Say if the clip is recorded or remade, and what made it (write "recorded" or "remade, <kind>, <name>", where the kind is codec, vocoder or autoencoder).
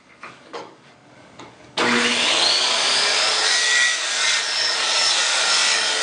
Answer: remade, codec, DAC